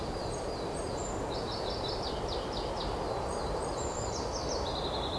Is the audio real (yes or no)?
yes